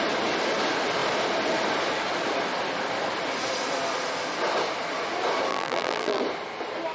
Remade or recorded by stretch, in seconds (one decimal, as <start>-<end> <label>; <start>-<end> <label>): 0.0-5.5 recorded; 5.5-6.2 remade; 6.2-6.9 recorded